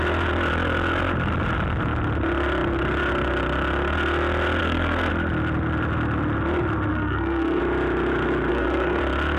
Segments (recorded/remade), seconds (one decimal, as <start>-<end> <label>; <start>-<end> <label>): 0.0-4.6 recorded; 4.6-5.1 remade; 5.1-6.9 recorded; 6.9-7.6 remade; 7.6-8.5 recorded; 8.5-9.0 remade; 9.0-9.4 recorded